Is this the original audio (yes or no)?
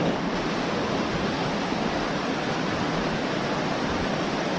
yes